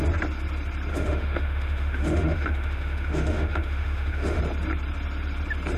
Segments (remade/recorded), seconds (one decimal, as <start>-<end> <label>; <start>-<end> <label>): 0.0-0.9 recorded; 0.9-4.4 remade; 4.4-5.8 recorded